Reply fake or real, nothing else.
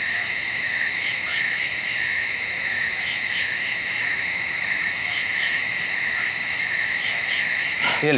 fake